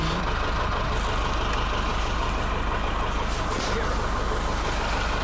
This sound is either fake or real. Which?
real